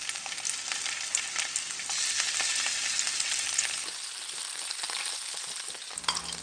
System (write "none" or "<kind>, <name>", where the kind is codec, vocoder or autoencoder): none